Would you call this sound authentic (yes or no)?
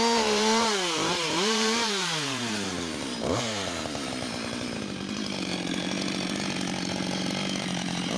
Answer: no